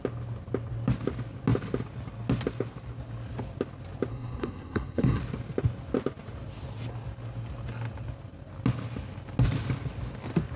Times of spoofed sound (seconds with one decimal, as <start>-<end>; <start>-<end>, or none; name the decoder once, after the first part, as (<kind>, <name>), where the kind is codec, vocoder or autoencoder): 4.1-5.2 (codec, SNAC)